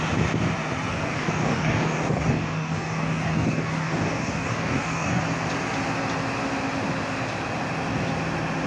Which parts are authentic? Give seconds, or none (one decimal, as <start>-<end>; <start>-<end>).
0.0-0.9; 5.2-8.7